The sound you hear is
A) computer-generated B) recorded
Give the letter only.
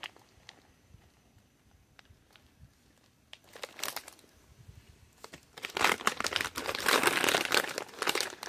B